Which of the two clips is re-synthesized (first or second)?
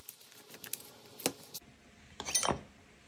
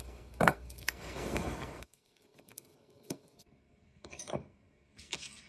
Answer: second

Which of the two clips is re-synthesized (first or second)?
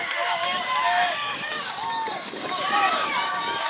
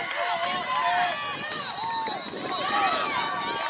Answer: first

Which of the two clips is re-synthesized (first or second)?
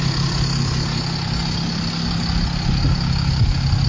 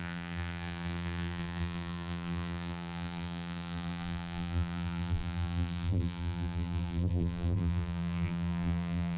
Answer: second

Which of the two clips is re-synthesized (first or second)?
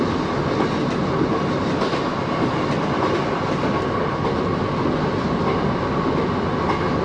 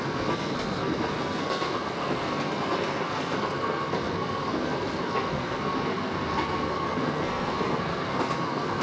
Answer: second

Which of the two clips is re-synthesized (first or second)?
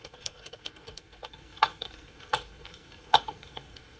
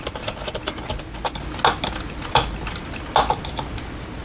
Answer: first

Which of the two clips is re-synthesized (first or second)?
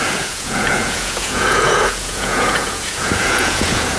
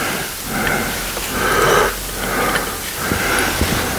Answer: first